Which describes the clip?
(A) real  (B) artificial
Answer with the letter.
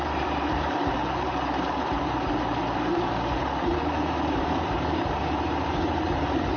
B